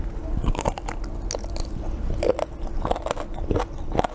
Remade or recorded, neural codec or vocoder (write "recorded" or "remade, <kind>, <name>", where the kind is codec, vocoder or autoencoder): recorded